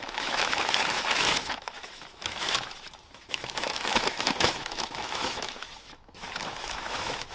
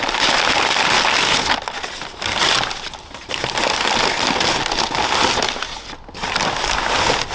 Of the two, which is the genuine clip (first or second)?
second